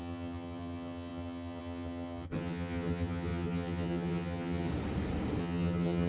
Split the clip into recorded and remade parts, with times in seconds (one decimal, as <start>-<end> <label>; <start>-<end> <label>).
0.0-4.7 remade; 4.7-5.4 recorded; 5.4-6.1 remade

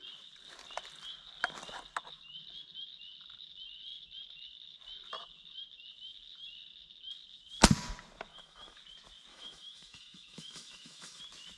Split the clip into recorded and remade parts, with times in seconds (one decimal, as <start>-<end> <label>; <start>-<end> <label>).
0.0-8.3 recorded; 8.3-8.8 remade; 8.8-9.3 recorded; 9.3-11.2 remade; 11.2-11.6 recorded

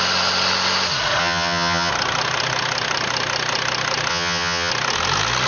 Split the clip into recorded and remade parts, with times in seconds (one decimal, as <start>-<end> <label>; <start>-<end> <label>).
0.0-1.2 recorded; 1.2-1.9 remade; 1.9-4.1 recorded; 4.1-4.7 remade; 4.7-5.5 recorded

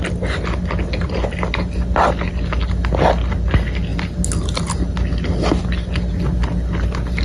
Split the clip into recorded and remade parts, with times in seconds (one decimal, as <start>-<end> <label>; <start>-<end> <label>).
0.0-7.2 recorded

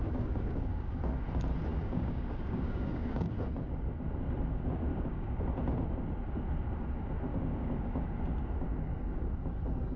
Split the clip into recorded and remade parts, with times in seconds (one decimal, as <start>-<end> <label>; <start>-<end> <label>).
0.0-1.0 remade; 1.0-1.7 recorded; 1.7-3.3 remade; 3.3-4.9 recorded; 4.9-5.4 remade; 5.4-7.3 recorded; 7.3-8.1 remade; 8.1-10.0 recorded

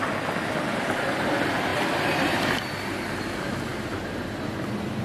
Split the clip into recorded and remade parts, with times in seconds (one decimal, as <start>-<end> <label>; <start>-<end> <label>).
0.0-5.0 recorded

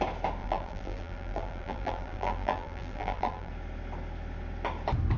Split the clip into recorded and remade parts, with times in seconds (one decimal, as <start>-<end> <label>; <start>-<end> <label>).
0.0-0.4 recorded; 0.4-3.5 remade; 3.5-5.2 recorded